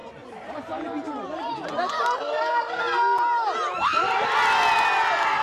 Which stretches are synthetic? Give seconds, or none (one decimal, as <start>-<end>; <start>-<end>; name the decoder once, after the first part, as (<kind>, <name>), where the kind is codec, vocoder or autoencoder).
none